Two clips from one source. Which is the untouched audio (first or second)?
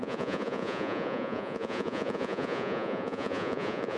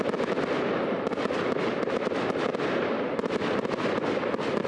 second